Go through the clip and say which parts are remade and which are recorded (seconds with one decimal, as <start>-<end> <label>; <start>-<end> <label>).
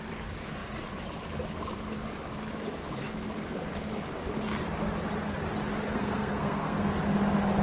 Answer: 0.0-5.9 recorded; 5.9-6.9 remade; 6.9-7.6 recorded